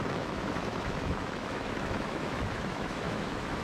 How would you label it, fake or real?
fake